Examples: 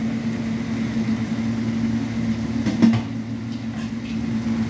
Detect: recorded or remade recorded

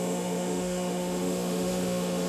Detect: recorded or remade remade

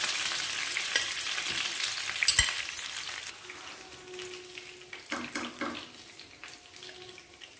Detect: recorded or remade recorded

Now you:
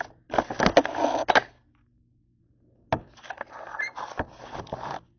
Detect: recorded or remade recorded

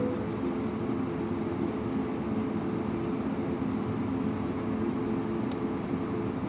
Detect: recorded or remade recorded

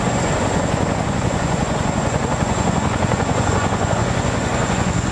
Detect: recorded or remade remade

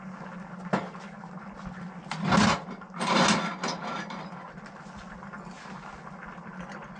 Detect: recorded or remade recorded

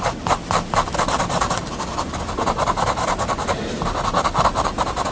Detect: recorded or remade recorded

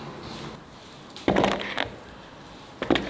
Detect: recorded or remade recorded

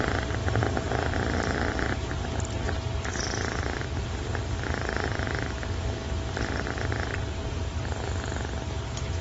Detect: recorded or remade recorded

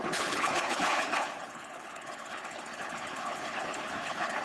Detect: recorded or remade remade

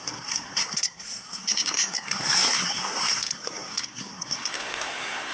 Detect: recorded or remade remade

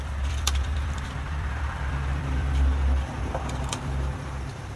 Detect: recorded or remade remade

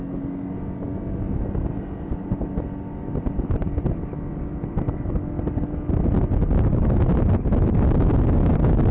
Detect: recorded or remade recorded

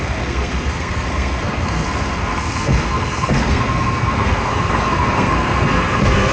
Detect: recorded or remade remade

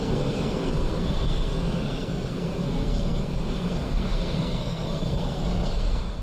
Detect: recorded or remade remade